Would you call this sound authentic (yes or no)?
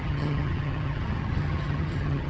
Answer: no